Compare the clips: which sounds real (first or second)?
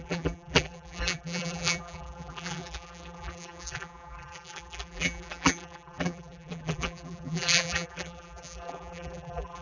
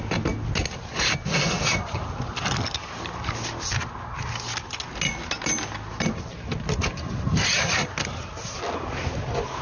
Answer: second